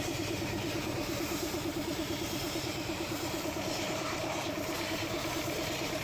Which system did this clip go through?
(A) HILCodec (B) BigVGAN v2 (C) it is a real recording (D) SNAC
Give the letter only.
B